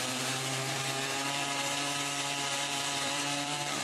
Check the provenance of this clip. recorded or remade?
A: remade